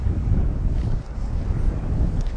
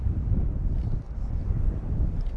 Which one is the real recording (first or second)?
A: second